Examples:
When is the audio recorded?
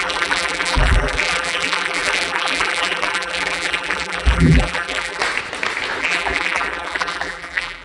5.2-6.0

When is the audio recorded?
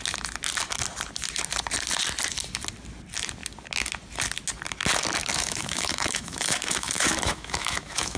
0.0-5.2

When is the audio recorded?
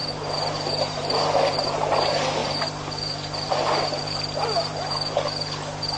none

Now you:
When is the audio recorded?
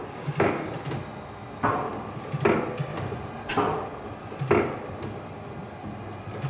0.7-6.5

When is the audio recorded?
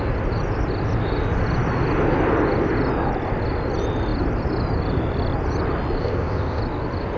0.0-6.0; 6.6-7.2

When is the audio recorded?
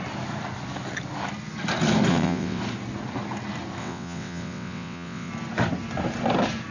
0.0-2.1; 2.6-3.8; 5.3-6.7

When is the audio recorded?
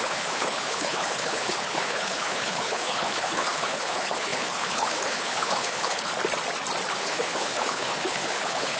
6.1-6.9